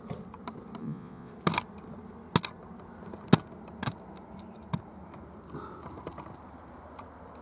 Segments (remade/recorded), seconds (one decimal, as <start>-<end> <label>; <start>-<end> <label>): 0.0-0.8 recorded; 0.8-1.3 remade; 1.3-7.4 recorded